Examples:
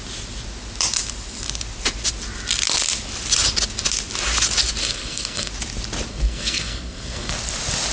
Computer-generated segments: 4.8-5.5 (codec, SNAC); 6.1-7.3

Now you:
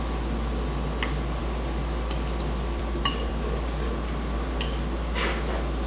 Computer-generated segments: none

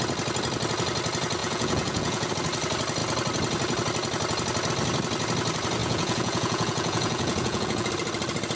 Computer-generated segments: 1.4-2.3 (vocoder, Vocos); 5.8-7.9

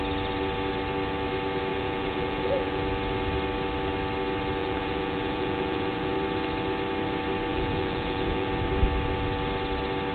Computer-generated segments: 1.7-2.8 (vocoder, Vocos); 4.6-6.1; 7.5-8.5